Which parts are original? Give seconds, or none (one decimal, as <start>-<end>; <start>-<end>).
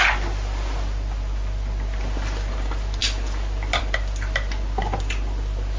0.0-5.8